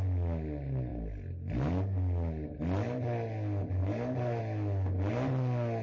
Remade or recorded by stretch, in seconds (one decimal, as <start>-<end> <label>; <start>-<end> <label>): 0.0-3.8 recorded; 3.8-4.4 remade; 4.4-5.8 recorded

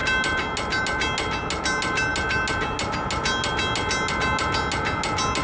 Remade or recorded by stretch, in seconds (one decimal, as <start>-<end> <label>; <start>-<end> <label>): 0.0-5.4 recorded

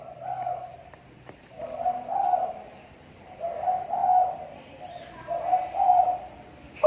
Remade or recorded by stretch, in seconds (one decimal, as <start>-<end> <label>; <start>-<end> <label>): 0.0-4.0 remade; 4.0-5.4 recorded; 5.4-6.9 remade

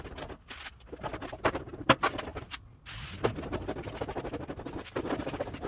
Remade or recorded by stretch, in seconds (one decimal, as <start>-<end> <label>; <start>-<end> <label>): 0.0-5.7 recorded

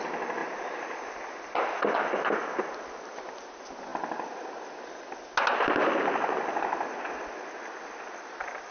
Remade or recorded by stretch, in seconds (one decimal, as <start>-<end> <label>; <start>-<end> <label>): 0.0-0.4 recorded; 0.4-1.8 remade; 1.8-8.7 recorded

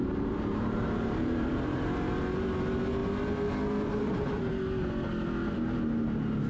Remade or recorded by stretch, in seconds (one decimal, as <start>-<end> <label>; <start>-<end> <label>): 0.0-1.5 remade; 1.5-6.5 recorded

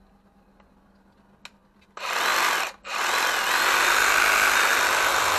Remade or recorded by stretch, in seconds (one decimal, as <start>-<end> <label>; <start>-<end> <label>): 0.0-5.4 recorded